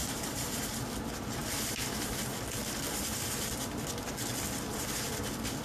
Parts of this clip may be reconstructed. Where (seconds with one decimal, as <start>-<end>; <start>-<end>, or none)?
0.0-0.5